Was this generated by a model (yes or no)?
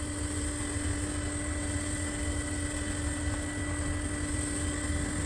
no